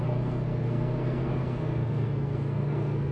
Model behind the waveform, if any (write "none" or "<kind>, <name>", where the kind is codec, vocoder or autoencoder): codec, SNAC